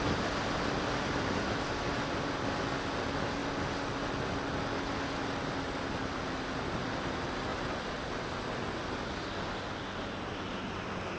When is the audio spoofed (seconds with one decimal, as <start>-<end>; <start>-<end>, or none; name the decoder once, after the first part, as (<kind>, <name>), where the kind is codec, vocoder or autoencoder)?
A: none